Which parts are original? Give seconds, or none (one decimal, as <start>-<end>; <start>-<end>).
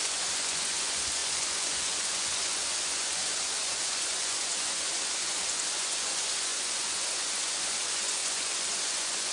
none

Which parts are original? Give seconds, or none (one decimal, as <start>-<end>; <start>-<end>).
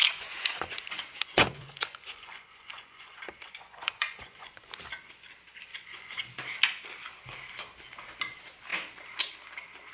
4.7-5.7; 6.4-9.9